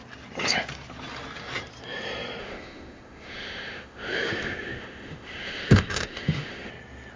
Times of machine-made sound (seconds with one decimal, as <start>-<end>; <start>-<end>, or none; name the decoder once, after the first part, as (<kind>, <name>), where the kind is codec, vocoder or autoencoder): 2.4-6.7 (autoencoder, DAC-VAE)